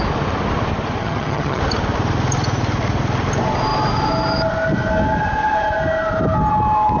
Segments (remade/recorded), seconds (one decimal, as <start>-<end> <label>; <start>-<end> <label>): 0.0-1.0 recorded; 1.0-1.6 remade; 1.6-7.0 recorded